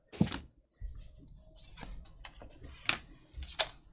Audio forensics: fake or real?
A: real